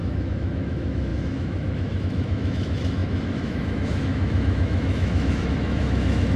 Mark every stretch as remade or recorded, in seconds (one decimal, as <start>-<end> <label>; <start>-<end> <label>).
0.0-6.4 remade